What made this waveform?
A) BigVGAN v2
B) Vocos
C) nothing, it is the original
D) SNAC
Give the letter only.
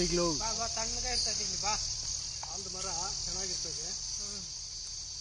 C